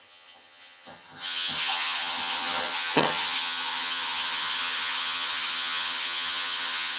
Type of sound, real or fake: fake